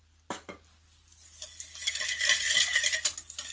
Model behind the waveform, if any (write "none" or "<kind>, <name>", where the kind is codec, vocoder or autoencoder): none